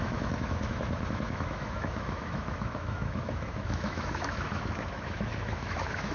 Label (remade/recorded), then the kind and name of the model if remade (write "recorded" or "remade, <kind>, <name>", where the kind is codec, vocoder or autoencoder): remade, autoencoder, DAC-VAE